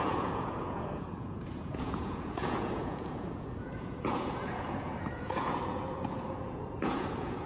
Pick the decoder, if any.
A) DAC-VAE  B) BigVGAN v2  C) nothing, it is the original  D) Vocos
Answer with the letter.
D